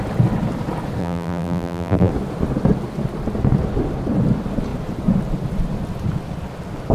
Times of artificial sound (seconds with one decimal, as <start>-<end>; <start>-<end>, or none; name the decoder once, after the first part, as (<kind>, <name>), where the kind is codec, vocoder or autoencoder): 1.0-2.1 (vocoder, BigVGAN v2)